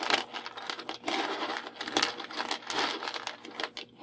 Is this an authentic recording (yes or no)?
yes